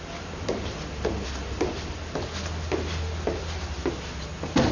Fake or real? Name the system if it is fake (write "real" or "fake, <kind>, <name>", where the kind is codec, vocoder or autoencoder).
real